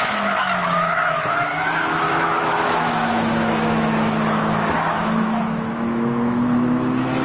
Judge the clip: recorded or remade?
remade